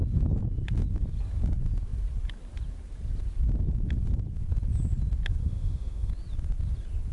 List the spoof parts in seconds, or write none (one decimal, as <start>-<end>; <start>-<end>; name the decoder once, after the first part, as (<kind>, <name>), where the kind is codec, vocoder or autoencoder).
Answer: 5.4-6.1 (autoencoder, DAC-VAE)